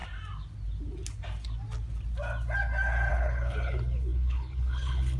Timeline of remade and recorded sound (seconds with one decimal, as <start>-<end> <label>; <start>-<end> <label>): 0.0-3.1 recorded; 3.1-5.2 remade